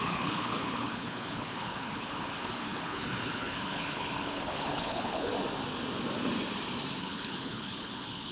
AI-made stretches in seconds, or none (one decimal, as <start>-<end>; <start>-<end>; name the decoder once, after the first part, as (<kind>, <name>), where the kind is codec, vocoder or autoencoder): 0.0-5.3 (codec, HILCodec); 7.0-8.3